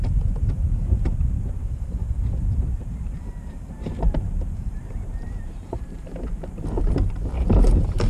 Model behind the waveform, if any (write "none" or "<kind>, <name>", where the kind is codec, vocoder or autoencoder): vocoder, BigVGAN v2